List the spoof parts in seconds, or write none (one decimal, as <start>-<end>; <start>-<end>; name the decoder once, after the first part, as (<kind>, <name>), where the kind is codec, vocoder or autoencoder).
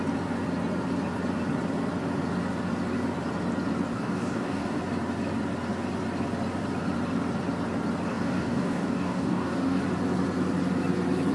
3.9-4.8 (codec, DAC); 8.1-9.8